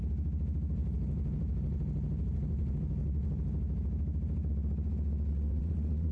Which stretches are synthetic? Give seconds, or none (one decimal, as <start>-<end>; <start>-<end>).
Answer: 5.3-6.1